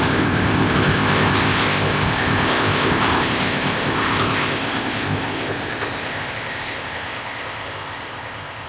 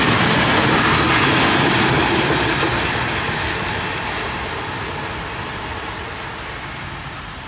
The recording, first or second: second